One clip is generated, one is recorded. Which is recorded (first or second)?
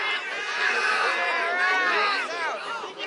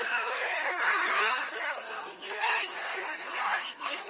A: first